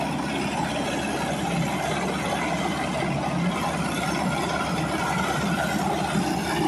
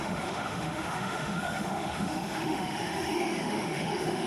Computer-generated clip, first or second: second